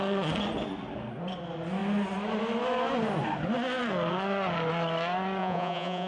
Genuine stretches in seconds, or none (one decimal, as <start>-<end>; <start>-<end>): 0.0-5.4